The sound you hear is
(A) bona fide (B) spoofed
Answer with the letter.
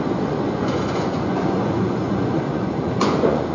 B